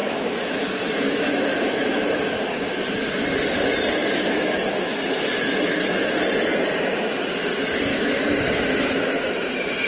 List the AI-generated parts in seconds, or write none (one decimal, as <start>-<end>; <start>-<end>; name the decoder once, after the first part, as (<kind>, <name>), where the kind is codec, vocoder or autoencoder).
0.0-3.1 (autoencoder, DAC-VAE); 4.0-6.2; 7.9-9.5